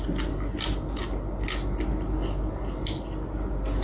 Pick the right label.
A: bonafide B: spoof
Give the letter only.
A